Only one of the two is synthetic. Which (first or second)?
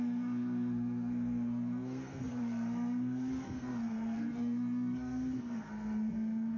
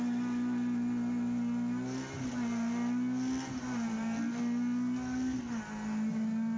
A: first